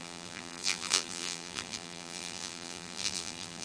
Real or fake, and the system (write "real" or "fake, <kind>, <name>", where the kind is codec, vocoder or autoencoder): fake, vocoder, BigVGAN v2